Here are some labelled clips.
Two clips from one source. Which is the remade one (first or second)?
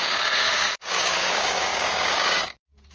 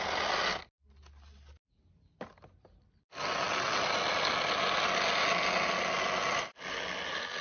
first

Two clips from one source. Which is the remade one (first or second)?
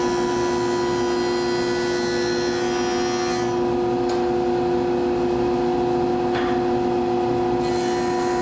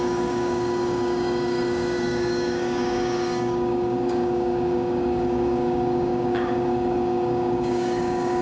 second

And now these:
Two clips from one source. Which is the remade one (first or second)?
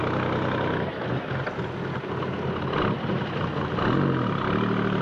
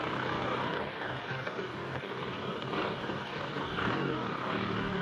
second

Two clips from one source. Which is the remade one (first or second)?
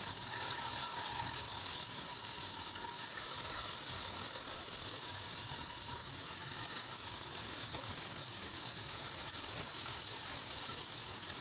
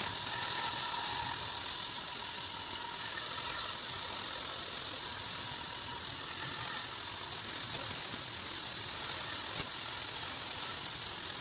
first